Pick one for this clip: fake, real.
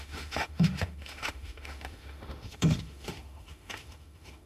fake